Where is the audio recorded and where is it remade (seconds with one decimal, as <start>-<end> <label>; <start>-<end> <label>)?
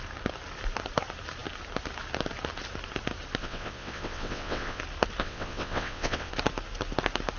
0.0-3.4 recorded; 3.4-4.8 remade; 4.8-5.2 recorded; 5.2-6.3 remade; 6.3-7.4 recorded